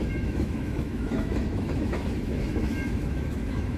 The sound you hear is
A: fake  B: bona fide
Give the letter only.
A